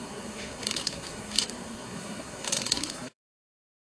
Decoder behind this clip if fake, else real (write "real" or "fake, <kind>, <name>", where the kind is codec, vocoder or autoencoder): fake, codec, SNAC